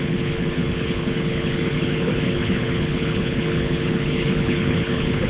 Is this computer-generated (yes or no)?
yes